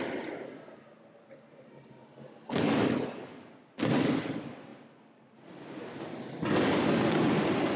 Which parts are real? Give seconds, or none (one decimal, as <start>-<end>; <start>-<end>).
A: 0.0-7.8